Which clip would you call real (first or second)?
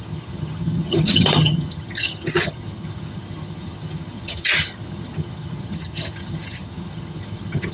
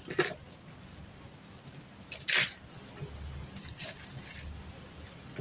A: second